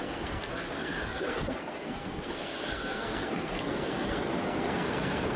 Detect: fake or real fake